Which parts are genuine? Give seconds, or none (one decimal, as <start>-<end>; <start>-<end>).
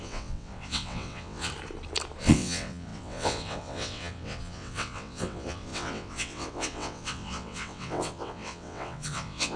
1.5-2.2